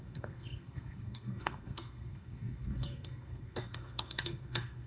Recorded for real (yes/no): no